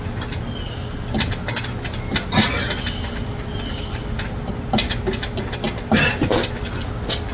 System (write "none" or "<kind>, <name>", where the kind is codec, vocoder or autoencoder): none